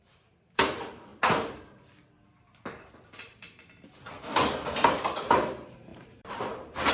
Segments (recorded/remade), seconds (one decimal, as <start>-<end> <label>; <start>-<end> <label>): 0.0-1.1 remade; 1.1-5.2 recorded; 5.2-6.9 remade